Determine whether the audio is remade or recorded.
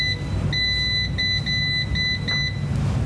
recorded